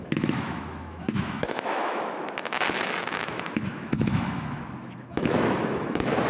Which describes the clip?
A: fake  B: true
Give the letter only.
A